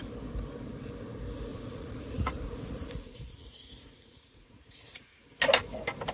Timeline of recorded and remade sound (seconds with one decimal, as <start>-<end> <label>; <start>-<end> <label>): 0.0-1.5 recorded; 1.5-5.2 remade; 5.2-6.1 recorded